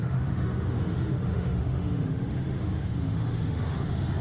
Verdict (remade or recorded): remade